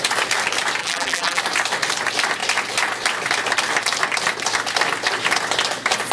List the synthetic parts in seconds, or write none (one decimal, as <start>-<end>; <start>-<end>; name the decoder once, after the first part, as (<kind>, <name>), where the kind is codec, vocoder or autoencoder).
0.8-1.4 (vocoder, BigVGAN v2)